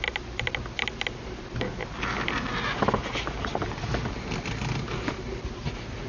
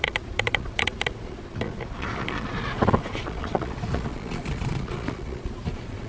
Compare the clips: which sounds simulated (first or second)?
second